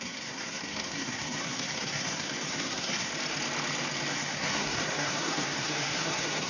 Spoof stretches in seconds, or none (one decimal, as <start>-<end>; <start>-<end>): 0.0-3.1; 4.1-6.5